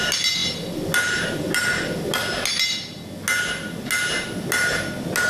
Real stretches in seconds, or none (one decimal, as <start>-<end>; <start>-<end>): 0.0-5.3